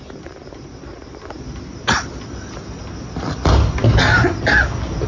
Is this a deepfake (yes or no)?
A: no